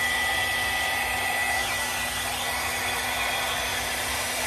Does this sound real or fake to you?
real